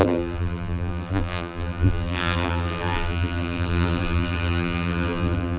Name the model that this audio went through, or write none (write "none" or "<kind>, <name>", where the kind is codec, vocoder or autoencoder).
vocoder, BigVGAN v2